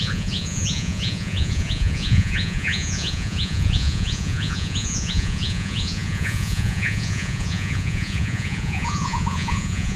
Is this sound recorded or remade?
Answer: remade